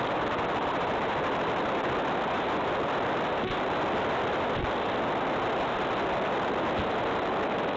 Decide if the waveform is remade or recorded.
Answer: recorded